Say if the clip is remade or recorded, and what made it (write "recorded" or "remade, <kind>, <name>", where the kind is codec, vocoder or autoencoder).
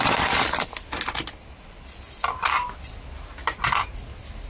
recorded